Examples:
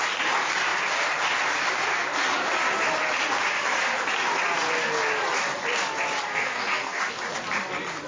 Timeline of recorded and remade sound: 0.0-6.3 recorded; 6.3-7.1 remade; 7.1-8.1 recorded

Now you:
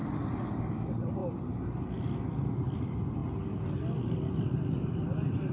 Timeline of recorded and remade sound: 0.0-0.5 recorded; 0.5-1.2 remade; 1.2-2.8 recorded; 2.8-3.2 remade; 3.2-4.3 recorded; 4.3-5.5 remade